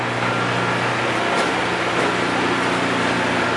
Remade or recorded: recorded